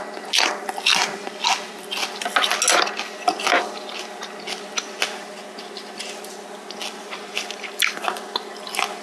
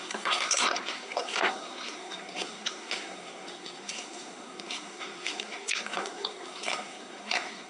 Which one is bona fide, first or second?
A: first